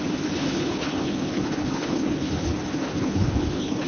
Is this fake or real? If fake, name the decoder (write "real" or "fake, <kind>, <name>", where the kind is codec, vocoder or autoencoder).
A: fake, codec, HILCodec